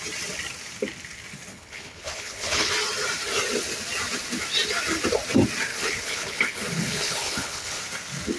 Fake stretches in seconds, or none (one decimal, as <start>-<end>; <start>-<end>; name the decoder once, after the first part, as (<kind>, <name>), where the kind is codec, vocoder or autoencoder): 1.5-2.7 (codec, HILCodec); 5.7-7.8